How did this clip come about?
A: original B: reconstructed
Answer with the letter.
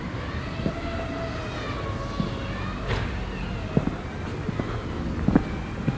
A